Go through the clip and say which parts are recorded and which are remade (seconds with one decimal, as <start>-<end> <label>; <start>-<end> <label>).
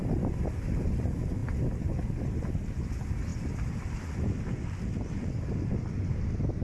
0.0-6.6 recorded